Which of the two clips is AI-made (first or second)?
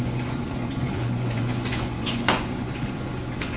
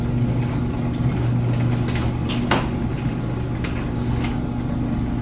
first